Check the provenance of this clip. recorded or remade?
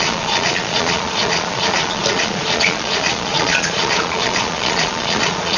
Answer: remade